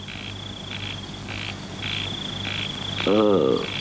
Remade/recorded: recorded